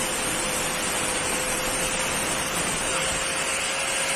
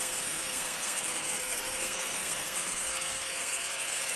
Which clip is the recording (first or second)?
first